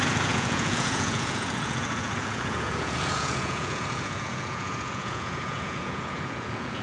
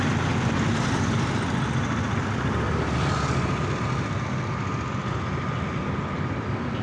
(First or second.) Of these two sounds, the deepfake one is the first